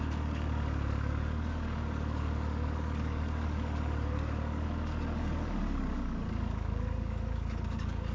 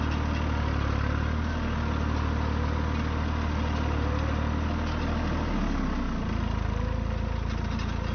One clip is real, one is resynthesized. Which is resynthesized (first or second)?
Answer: first